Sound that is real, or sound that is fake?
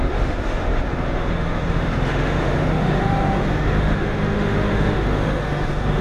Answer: fake